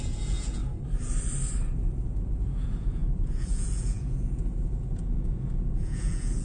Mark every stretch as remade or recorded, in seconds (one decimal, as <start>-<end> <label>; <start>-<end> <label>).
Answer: 0.0-0.6 remade; 0.6-2.2 recorded; 2.2-6.4 remade